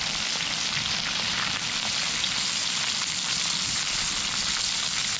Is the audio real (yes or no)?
yes